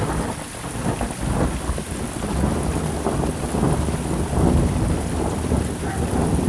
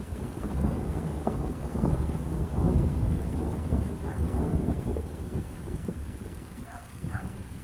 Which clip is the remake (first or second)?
second